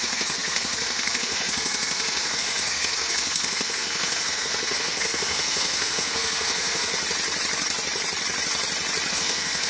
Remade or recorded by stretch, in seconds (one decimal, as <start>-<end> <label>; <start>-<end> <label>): 0.0-6.9 remade; 6.9-9.1 recorded; 9.1-9.7 remade